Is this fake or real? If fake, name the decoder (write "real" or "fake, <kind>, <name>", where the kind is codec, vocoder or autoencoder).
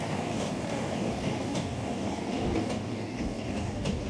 fake, codec, DAC